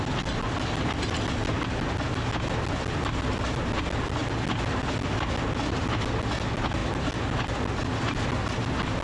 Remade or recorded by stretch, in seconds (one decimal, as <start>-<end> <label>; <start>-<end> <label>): 0.0-9.0 recorded